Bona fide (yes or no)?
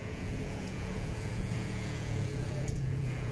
no